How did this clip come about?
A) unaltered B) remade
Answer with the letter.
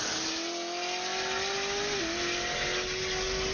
A